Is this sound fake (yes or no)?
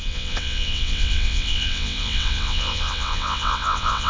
yes